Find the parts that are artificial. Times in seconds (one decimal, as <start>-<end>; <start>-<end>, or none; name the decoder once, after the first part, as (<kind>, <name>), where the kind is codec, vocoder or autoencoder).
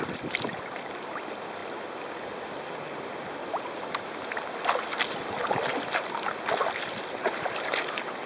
none